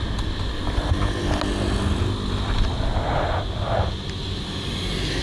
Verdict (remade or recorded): recorded